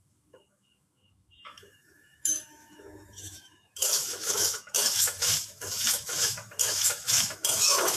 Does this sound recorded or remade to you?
remade